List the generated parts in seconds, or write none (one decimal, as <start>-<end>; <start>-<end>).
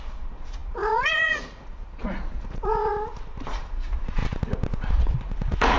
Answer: 0.0-2.9; 3.5-4.2; 4.9-5.8